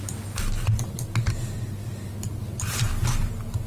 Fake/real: real